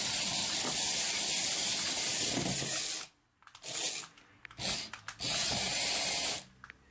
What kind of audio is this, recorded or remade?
recorded